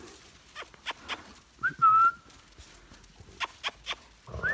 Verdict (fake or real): real